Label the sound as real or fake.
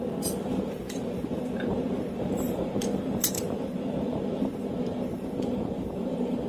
fake